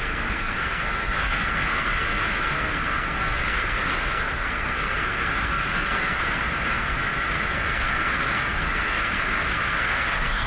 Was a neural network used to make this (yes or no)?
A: yes